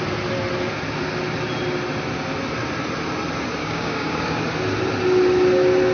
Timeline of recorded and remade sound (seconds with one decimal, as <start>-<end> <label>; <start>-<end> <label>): 0.0-3.6 recorded; 3.6-4.4 remade; 4.4-5.9 recorded

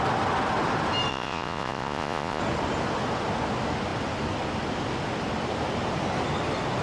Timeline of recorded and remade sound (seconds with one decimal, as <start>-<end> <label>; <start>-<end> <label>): 0.0-1.1 recorded; 1.1-2.4 remade; 2.4-6.8 recorded

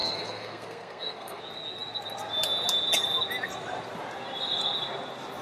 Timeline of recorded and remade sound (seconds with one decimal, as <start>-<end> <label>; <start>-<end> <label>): 0.0-1.4 remade; 1.4-5.4 recorded